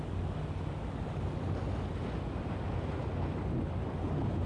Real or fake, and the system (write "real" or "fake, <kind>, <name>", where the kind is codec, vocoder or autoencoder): real